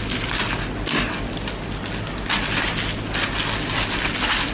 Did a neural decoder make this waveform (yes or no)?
no